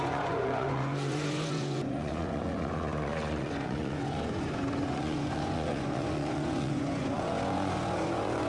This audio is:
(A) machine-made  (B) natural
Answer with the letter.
A